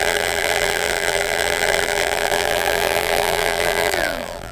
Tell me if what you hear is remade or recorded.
remade